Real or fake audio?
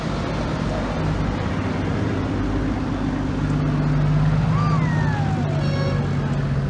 real